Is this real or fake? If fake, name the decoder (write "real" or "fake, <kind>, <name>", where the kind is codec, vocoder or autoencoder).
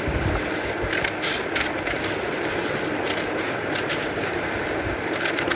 real